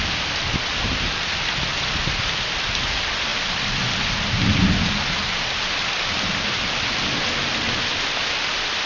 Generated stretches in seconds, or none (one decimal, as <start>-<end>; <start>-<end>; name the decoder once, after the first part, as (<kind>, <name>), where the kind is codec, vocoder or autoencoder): 0.0-3.3 (vocoder, BigVGAN v2); 7.2-8.9